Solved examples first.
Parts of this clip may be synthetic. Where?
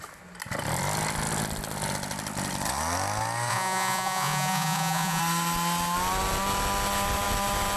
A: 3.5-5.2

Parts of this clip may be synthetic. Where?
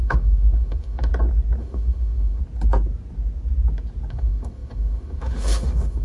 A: 0.0-1.1; 1.6-2.4; 4.1-6.0